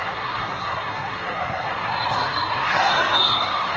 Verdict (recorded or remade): remade